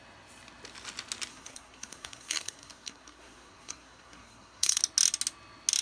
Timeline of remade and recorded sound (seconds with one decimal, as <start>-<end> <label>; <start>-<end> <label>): 0.0-1.3 recorded; 1.3-4.8 remade; 4.8-5.8 recorded